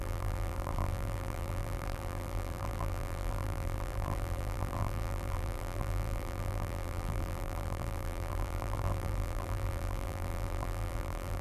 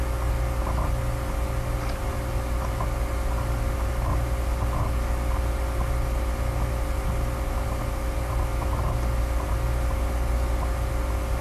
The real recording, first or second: second